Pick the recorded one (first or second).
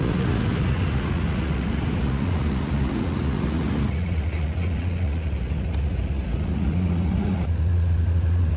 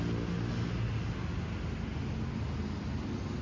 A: second